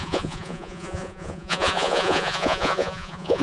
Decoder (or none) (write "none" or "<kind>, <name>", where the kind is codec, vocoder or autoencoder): vocoder, Vocos